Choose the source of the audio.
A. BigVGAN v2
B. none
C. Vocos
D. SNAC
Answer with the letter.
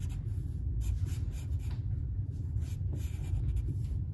A